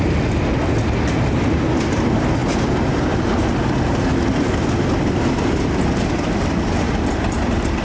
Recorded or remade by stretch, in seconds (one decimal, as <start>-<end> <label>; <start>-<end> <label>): 0.0-7.8 recorded